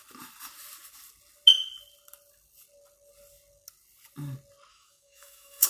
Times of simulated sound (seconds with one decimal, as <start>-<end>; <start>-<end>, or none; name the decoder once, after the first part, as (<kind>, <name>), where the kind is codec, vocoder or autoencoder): 4.7-5.7 (autoencoder, DAC-VAE)